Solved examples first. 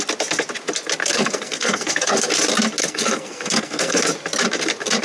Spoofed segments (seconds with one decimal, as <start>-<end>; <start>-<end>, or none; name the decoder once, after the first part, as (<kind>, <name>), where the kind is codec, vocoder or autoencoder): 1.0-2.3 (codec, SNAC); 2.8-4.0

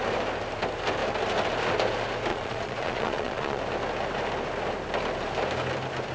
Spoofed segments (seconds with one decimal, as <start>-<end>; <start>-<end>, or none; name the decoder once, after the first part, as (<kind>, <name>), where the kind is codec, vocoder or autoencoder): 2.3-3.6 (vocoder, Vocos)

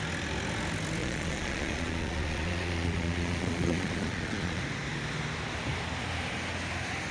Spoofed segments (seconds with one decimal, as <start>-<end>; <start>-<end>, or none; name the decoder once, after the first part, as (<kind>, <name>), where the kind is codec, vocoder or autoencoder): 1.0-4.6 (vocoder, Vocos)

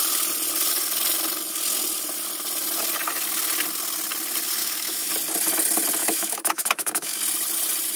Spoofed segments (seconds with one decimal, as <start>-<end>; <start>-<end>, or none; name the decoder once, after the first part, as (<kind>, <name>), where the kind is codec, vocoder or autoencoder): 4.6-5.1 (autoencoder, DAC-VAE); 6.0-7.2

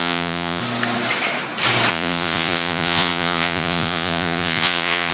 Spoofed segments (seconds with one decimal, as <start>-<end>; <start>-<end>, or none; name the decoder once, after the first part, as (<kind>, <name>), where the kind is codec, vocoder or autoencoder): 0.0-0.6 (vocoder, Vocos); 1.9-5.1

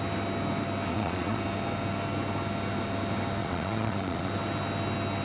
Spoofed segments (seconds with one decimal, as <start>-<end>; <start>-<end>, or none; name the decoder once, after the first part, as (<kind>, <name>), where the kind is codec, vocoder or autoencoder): 0.9-1.4 (vocoder, Vocos); 3.4-4.3

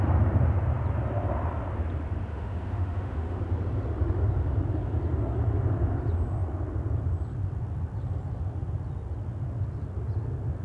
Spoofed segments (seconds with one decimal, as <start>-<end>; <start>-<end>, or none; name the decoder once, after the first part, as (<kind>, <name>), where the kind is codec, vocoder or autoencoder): 2.3-3.4 (autoencoder, DAC-VAE)